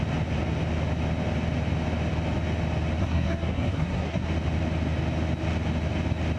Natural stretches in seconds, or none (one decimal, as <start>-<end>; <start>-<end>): 0.0-3.0; 4.3-6.4